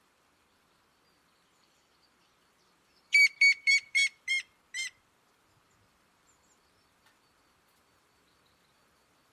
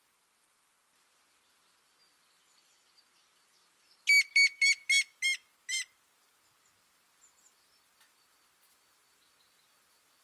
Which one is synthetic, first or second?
first